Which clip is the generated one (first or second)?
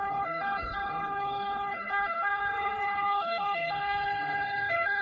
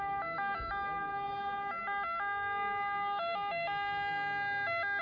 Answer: first